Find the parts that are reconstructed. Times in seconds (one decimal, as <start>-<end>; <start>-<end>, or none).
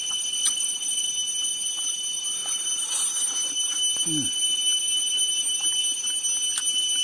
0.0-1.1